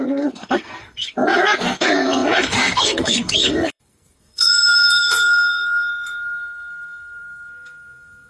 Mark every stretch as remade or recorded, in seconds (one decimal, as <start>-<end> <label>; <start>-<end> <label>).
0.0-8.3 remade